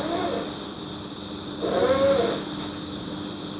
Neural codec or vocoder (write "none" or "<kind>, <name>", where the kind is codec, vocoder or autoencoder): none